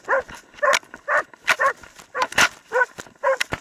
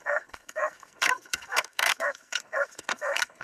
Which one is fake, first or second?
second